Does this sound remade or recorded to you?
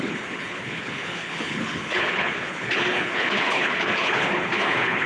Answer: remade